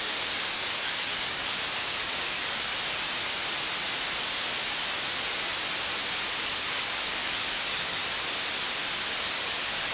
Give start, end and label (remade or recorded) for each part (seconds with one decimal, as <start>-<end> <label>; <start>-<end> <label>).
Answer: 0.0-2.7 remade; 2.7-6.2 recorded; 6.2-8.0 remade; 8.0-9.2 recorded; 9.2-9.9 remade